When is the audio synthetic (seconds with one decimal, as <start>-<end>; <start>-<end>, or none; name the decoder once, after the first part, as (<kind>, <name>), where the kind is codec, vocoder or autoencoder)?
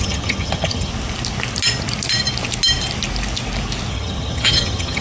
0.0-0.9 (vocoder, HiFi-GAN); 3.9-5.0